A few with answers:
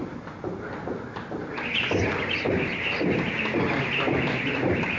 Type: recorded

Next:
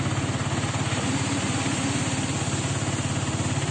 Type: recorded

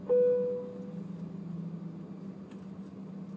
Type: recorded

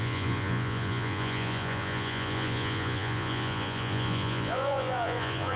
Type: remade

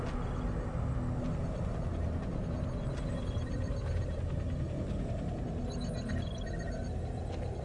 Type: recorded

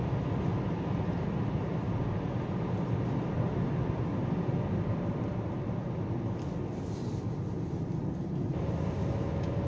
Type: recorded